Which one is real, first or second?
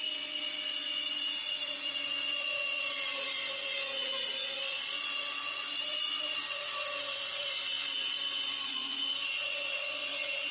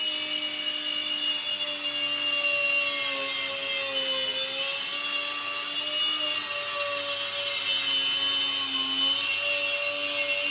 second